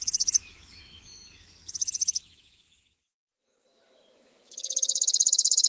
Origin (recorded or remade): remade